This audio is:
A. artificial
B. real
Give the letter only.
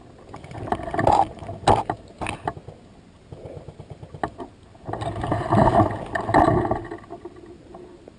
B